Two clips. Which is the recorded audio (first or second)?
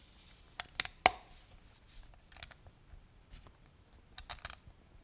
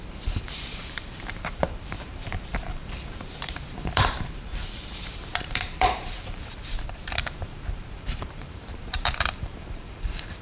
first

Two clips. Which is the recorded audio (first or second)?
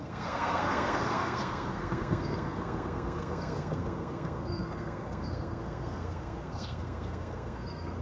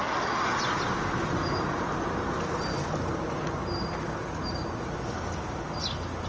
second